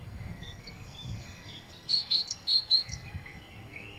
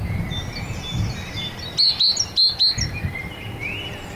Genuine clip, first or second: second